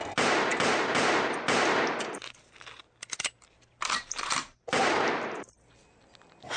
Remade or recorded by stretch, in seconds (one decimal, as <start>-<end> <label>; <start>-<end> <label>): 0.0-6.6 recorded